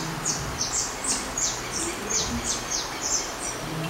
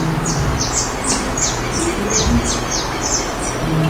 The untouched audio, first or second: second